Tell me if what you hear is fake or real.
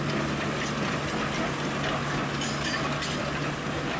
real